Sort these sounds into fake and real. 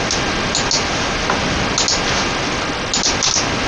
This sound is real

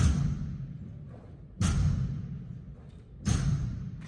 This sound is real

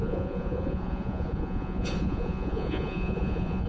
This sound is fake